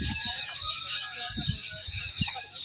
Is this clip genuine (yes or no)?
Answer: no